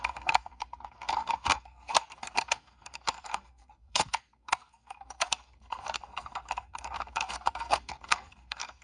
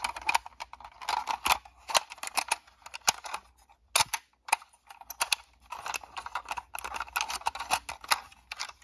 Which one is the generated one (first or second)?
first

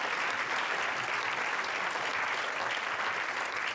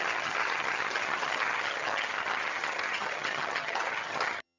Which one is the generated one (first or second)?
second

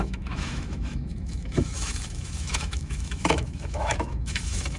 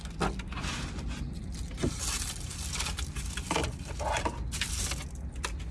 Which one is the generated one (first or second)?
first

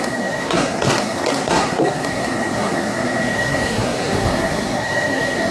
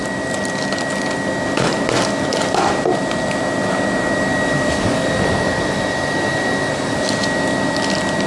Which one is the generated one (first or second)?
first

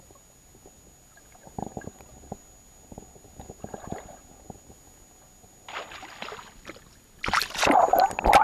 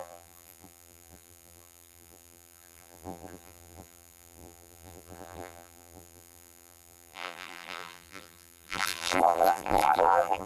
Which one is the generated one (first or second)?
second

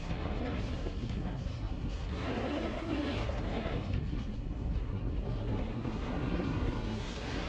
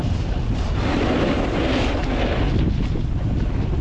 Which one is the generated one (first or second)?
first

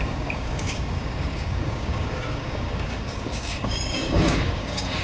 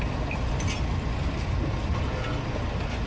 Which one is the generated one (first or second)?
first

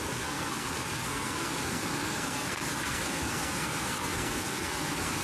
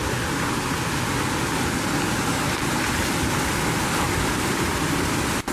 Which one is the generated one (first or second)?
first